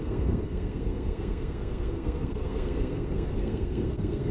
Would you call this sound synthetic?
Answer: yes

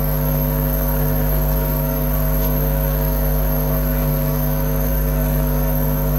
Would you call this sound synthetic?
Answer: yes